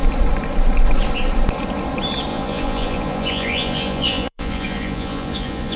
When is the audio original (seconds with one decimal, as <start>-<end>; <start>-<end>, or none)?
0.0-2.3